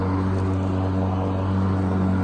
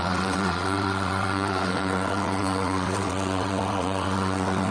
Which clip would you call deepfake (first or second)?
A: second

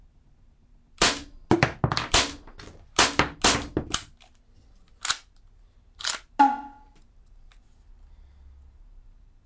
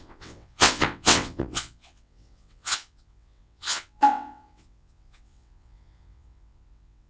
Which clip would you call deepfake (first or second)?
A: second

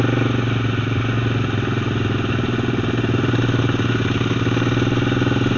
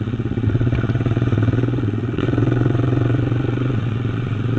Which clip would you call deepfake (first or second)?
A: second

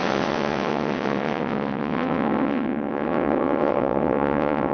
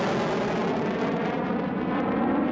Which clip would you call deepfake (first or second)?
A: first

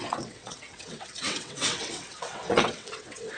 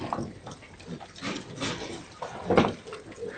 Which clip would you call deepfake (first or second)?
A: first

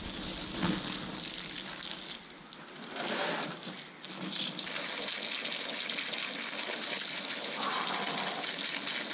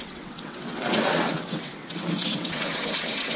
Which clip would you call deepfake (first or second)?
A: second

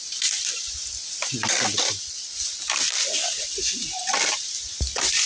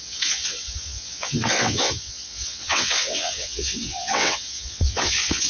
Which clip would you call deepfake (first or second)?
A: second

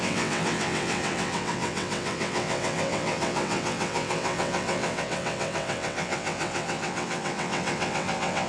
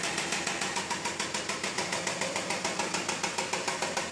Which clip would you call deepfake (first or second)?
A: first